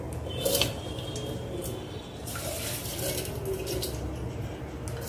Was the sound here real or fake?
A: real